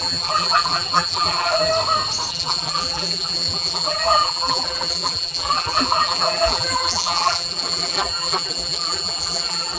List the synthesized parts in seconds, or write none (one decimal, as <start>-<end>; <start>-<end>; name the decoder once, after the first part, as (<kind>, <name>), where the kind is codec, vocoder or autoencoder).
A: 0.0-1.7 (vocoder, BigVGAN v2); 2.3-9.8